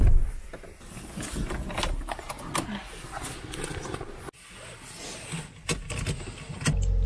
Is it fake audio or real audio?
real